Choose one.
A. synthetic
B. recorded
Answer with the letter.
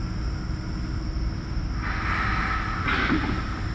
B